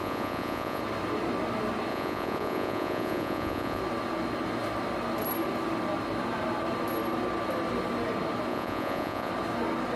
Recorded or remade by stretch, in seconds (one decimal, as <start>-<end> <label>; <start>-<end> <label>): 0.0-0.8 remade; 0.8-1.9 recorded; 1.9-3.8 remade; 3.8-8.5 recorded; 8.5-9.3 remade; 9.3-10.0 recorded